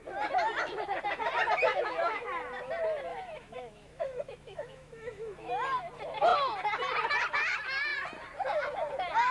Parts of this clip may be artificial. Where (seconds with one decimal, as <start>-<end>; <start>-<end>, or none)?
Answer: 1.7-2.3; 3.1-5.5